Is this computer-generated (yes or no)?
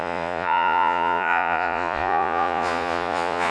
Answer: yes